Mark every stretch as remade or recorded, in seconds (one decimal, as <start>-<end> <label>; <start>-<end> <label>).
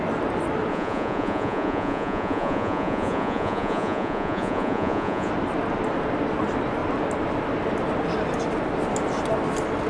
0.0-0.7 recorded; 0.7-5.3 remade; 5.3-9.9 recorded